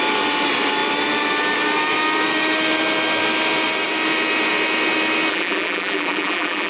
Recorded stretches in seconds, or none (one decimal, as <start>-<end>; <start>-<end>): 0.0-5.3